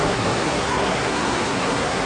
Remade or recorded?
remade